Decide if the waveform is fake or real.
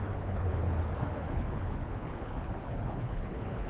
fake